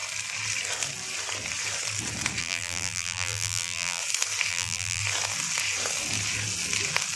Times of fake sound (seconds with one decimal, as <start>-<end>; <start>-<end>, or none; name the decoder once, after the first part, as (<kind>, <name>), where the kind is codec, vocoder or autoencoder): 2.4-4.0 (vocoder, BigVGAN v2); 4.5-5.0